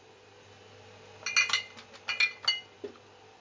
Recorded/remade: recorded